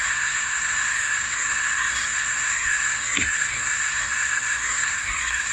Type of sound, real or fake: fake